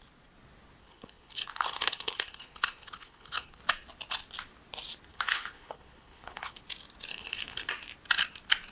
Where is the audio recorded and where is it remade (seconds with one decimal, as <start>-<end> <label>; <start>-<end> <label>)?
0.0-0.8 recorded; 0.8-3.6 remade; 3.6-5.1 recorded; 5.1-6.6 remade; 6.6-7.1 recorded; 7.1-7.7 remade; 7.7-8.7 recorded